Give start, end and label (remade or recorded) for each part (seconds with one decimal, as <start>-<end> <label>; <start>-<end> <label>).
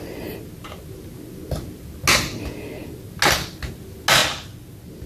0.0-5.1 recorded